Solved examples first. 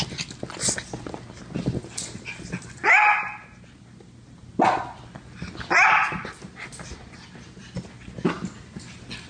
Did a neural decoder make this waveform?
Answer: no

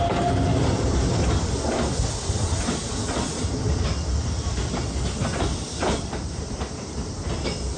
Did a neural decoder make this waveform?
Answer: no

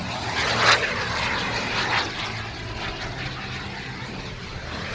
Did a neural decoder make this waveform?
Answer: no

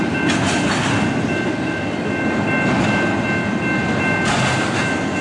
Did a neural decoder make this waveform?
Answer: no